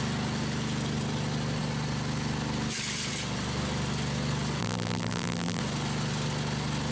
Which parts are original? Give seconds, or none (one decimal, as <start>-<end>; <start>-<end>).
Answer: 0.0-4.6; 5.6-6.9